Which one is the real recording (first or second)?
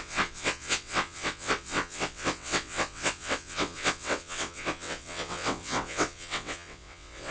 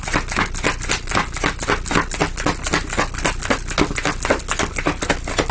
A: second